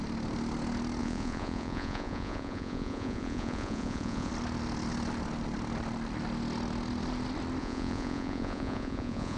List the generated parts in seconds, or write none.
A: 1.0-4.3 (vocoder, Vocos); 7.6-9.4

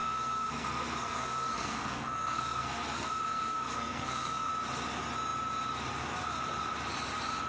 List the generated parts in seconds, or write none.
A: 0.0-4.5 (codec, SNAC)

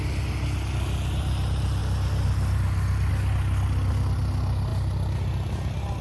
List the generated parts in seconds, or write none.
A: none

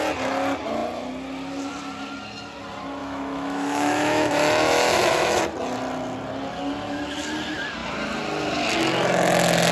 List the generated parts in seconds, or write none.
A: 3.0-5.4 (autoencoder, DAC-VAE)

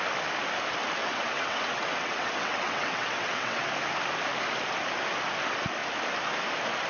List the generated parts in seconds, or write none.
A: 1.0-3.7 (vocoder, WaveNeXt)

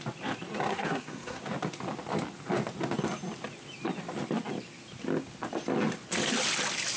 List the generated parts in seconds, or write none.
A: 0.7-1.4 (codec, SNAC)

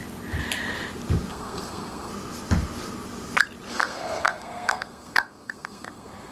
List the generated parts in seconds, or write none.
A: 1.3-2.1 (codec, SNAC); 3.7-6.3

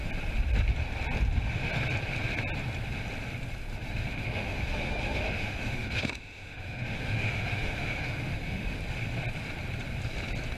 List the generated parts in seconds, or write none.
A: 3.7-8.8 (autoencoder, DAC-VAE)